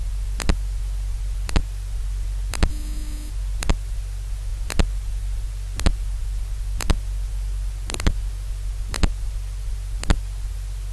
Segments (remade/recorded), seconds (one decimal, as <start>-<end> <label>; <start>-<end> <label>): 0.0-2.7 recorded; 2.7-3.3 remade; 3.3-10.9 recorded